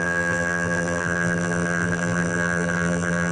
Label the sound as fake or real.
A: fake